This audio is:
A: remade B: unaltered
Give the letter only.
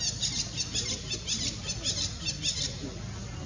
B